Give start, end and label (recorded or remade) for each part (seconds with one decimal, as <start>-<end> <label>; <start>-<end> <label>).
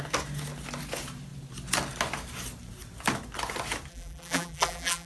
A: 0.0-3.9 recorded; 3.9-5.1 remade